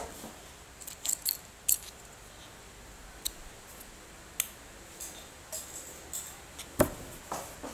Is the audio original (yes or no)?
yes